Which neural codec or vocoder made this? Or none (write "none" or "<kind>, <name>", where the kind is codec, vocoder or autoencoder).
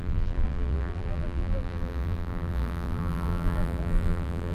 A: vocoder, BigVGAN v2